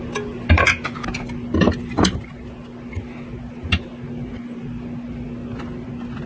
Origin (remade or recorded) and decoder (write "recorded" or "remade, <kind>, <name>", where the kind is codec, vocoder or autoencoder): recorded